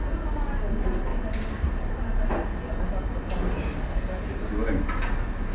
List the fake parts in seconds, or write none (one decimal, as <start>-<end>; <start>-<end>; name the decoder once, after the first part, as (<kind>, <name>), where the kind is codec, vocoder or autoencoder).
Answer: none